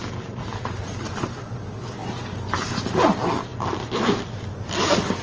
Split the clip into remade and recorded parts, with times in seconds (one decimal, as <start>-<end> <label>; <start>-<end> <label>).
0.0-5.2 recorded